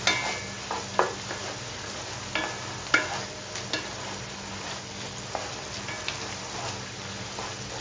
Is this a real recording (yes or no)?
yes